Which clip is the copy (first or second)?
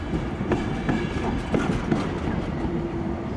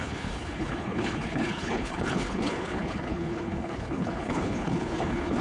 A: second